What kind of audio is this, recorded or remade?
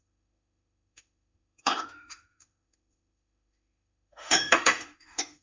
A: remade